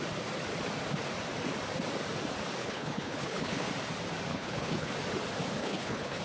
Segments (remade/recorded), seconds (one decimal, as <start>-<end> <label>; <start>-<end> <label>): 0.0-2.6 recorded; 2.6-3.7 remade; 3.7-4.3 recorded; 4.3-4.9 remade; 4.9-5.6 recorded; 5.6-6.2 remade